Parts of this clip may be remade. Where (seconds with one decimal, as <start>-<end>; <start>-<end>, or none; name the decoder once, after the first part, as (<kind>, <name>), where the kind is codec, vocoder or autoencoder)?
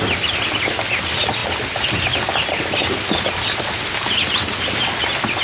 none